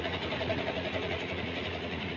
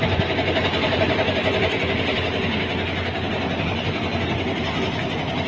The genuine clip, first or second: second